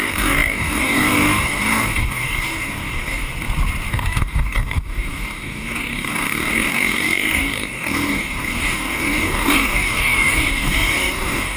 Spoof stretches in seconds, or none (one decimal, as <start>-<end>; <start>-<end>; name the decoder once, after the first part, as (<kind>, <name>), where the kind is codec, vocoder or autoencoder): 0.0-3.3 (codec, DAC); 3.9-11.6